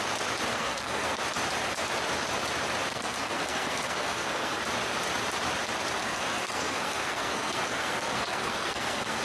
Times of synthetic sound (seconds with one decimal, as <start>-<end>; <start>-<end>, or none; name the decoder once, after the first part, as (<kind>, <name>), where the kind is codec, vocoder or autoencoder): 0.5-1.2 (codec, SNAC); 2.9-4.6; 6.0-9.2